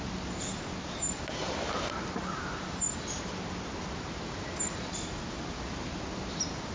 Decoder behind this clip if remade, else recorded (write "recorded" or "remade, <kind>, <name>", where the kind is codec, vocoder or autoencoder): recorded